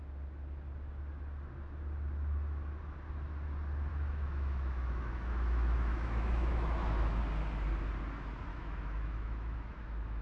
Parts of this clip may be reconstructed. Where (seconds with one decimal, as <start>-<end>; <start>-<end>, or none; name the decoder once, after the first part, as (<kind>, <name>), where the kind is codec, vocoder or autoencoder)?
3.9-7.2 (autoencoder, DAC-VAE); 8.5-10.2